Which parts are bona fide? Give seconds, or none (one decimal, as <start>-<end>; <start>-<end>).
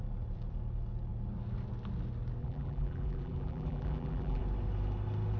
0.0-2.4; 4.4-5.4